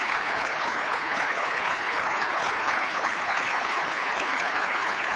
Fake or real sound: fake